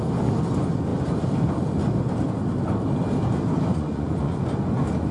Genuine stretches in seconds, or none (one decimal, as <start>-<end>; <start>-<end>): 0.0-3.7; 4.4-5.1